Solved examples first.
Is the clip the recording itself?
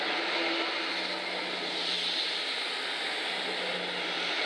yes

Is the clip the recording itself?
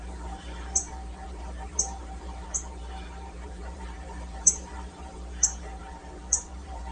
no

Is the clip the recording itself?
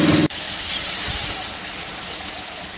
no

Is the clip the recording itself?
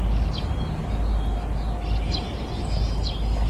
yes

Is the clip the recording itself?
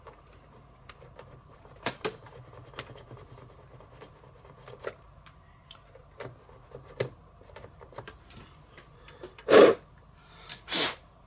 no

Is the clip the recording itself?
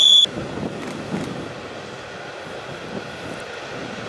yes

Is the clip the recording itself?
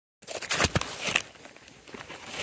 yes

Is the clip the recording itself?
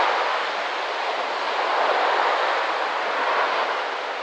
yes